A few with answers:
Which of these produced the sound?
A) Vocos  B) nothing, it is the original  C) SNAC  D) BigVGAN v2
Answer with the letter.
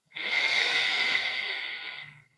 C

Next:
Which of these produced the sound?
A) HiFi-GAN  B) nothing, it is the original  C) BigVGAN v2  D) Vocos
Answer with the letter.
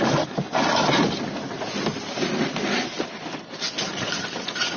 B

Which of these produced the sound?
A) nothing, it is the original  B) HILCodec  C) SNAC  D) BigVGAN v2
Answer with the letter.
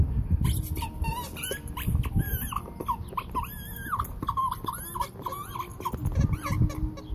A